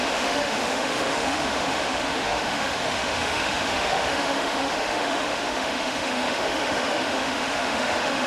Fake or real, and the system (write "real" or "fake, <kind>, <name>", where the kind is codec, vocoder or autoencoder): fake, autoencoder, DAC-VAE